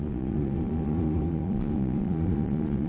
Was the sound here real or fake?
fake